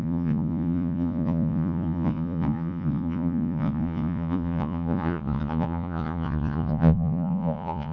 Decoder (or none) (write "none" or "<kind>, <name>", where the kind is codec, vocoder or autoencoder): vocoder, Vocos